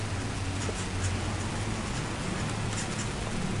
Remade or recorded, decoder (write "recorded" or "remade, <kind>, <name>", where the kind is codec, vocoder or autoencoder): recorded